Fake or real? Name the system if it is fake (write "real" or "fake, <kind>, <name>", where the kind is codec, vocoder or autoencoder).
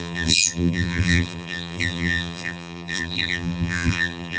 fake, vocoder, BigVGAN v2